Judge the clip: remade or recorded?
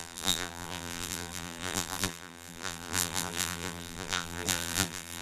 remade